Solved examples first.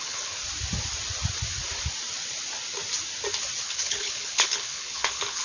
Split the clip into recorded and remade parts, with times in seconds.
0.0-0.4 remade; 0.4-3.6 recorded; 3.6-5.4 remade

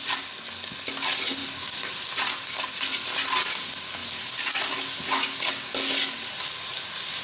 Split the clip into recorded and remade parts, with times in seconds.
0.0-7.2 recorded

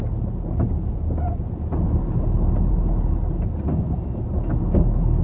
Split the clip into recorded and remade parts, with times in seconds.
0.0-5.2 recorded

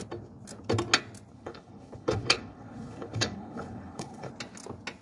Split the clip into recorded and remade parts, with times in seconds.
0.0-1.3 recorded; 1.3-4.3 remade; 4.3-5.0 recorded

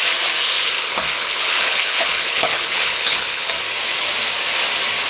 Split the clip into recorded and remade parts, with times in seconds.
0.0-0.4 recorded; 0.4-3.5 remade; 3.5-5.1 recorded

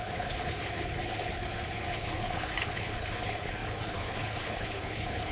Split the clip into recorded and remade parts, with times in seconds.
0.0-5.3 remade